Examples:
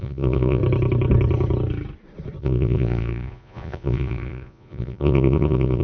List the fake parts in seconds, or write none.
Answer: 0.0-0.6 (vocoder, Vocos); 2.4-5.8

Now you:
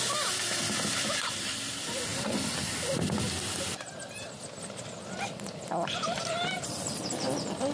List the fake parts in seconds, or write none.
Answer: none